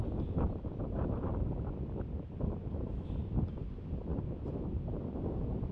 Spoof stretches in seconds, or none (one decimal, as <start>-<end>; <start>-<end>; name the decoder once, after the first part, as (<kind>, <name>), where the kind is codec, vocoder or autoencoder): none